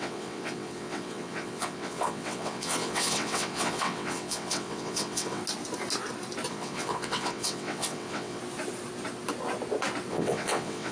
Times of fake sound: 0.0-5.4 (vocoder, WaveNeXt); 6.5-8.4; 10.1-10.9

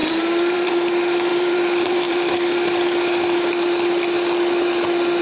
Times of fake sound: 0.0-0.7 (vocoder, BigVGAN v2); 1.3-2.3

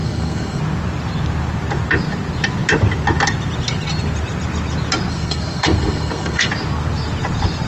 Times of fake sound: 0.0-0.6 (codec, SNAC); 5.1-6.5

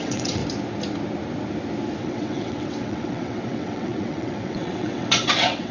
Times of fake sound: 0.0-0.4 (vocoder, WaveNeXt); 2.0-5.7

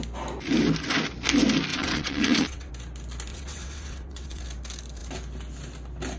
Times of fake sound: 1.7-2.7 (vocoder, WaveNeXt); 3.3-4.4

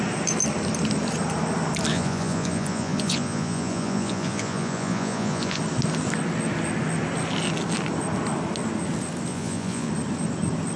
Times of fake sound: 1.9-5.6 (vocoder, Vocos); 9.3-9.9